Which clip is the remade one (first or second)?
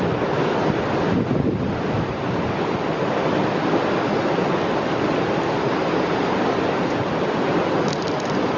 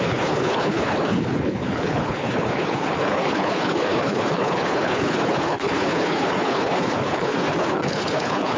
second